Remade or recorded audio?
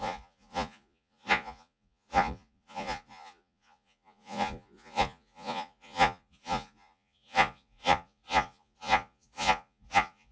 remade